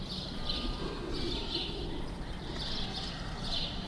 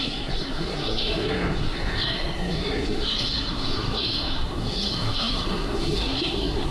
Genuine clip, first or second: first